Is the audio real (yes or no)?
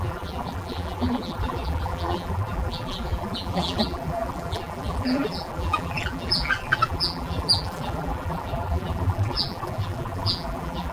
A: no